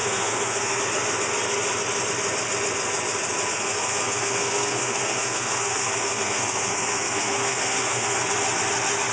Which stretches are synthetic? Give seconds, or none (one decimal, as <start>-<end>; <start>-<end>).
0.0-0.8; 3.5-8.2